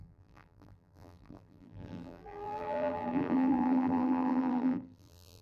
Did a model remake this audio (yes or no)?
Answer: yes